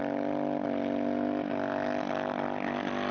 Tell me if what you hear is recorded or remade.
recorded